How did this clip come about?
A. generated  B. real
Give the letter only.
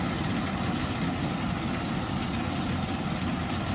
B